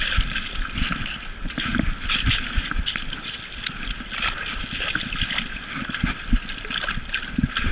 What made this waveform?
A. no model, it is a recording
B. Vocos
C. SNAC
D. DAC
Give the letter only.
A